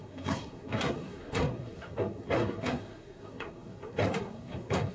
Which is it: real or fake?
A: fake